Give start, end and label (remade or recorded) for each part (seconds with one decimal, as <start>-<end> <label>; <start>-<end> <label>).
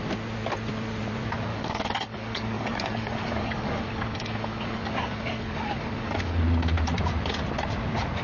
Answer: 0.0-1.5 recorded; 1.5-6.4 remade; 6.4-8.2 recorded